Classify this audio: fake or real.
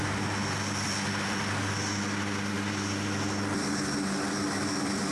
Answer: real